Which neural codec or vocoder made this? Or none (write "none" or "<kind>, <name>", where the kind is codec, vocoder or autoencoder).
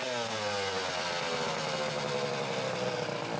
none